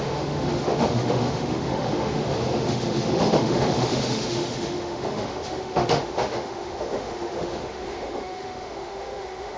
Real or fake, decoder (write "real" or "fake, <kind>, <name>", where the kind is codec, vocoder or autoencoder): fake, autoencoder, DAC-VAE